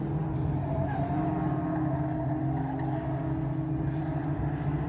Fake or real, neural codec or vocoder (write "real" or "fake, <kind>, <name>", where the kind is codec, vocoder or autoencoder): real